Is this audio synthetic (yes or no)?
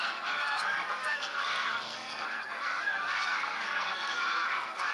yes